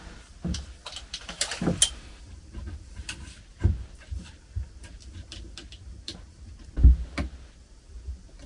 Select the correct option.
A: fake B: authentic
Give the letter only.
B